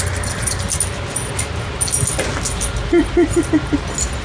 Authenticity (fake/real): real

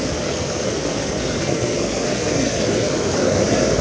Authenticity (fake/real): fake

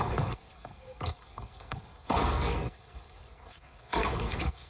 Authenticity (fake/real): fake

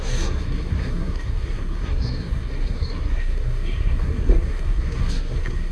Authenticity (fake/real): fake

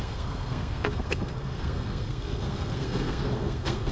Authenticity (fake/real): fake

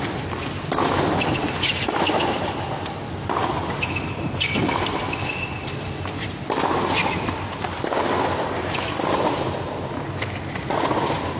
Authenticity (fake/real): real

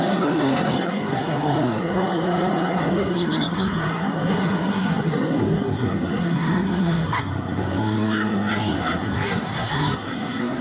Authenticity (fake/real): fake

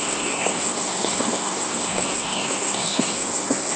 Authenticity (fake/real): fake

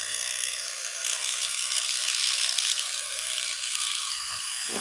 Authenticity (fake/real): fake